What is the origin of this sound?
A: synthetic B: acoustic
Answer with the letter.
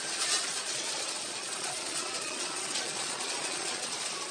A